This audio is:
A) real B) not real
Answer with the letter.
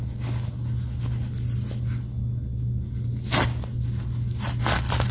A